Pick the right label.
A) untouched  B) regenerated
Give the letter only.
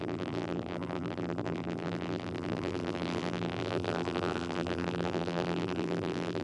B